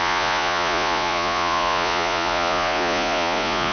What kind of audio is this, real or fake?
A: fake